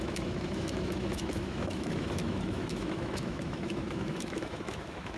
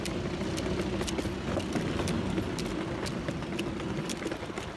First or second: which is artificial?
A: first